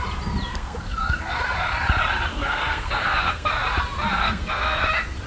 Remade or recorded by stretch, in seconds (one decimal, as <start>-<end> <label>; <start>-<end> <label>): 0.0-0.5 recorded; 0.5-1.3 remade; 1.3-2.3 recorded; 2.3-3.5 remade; 3.5-4.2 recorded; 4.2-4.8 remade; 4.8-5.3 recorded